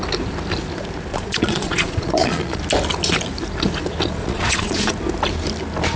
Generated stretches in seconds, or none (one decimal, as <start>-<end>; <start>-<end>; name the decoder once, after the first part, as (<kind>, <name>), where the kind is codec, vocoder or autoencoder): 1.1-2.6 (vocoder, Vocos); 4.2-4.9